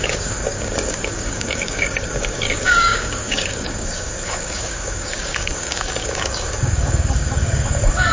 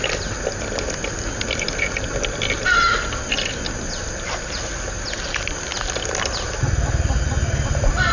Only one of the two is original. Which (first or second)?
second